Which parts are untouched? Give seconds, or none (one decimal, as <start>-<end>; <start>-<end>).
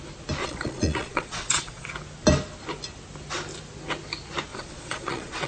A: 0.0-0.4; 1.9-4.5